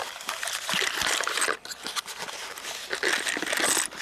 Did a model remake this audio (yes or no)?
no